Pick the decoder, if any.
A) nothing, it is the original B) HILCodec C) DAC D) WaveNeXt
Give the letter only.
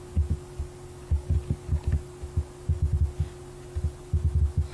A